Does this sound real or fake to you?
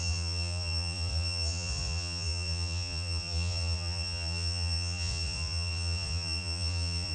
fake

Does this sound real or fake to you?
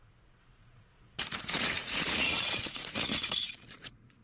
fake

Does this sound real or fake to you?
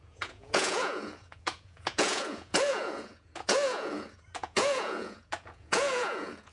fake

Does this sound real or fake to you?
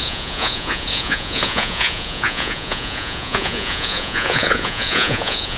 fake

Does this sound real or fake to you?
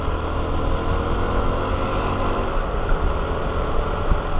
real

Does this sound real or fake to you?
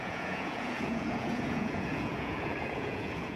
fake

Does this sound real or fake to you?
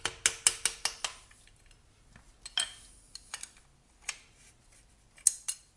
real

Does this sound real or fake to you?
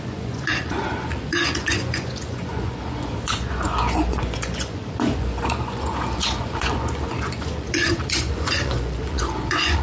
fake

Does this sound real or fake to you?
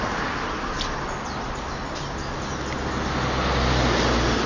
real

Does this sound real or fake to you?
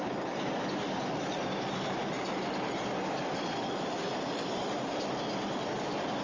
real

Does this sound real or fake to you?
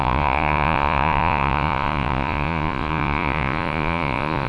fake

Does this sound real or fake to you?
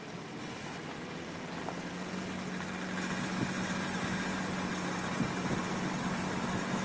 real